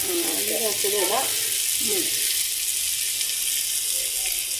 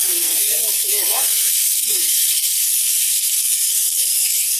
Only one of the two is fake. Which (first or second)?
second